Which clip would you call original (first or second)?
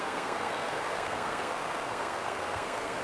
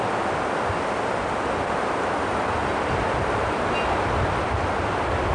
second